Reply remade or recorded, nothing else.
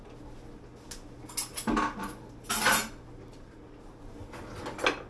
recorded